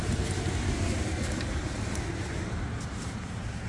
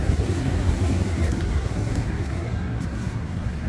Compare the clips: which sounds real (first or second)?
first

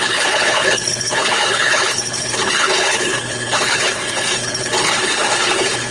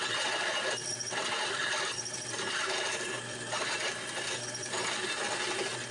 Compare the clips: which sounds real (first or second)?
second